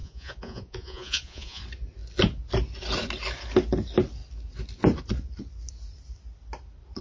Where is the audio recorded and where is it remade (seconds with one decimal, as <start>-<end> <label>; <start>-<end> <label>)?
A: 0.0-1.6 remade; 1.6-7.0 recorded